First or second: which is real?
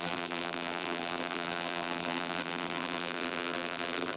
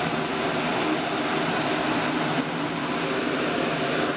second